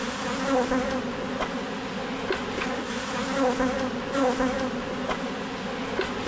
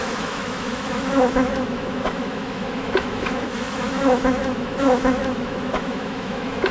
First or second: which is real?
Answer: first